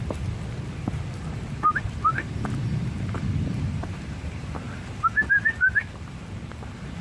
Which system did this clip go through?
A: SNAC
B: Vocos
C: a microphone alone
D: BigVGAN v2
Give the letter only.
D